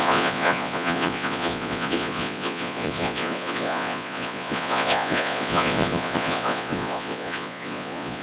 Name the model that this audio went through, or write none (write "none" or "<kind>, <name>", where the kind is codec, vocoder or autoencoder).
vocoder, Vocos